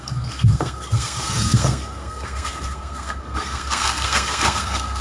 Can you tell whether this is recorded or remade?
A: remade